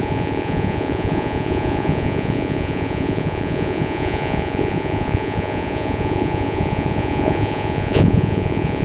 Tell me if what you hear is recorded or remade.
remade